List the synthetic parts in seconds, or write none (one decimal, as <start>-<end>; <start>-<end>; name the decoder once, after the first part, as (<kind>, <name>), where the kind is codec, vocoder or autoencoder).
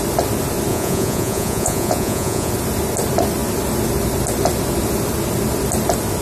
0.7-2.5 (vocoder, Vocos)